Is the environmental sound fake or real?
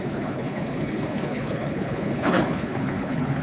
fake